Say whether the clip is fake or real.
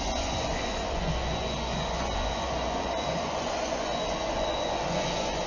fake